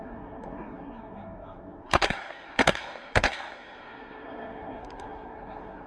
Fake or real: fake